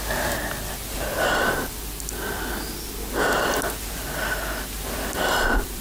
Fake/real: real